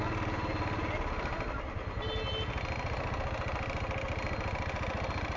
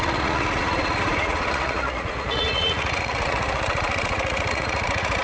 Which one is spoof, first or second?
second